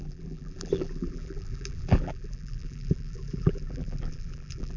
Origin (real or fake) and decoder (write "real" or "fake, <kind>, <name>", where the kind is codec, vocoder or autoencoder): fake, vocoder, BigVGAN v2